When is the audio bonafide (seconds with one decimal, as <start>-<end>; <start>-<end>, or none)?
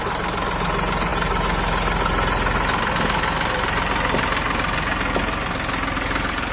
0.0-6.5